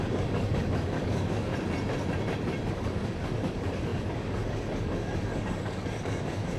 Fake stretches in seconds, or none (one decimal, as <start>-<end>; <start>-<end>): 0.0-1.5; 2.7-6.6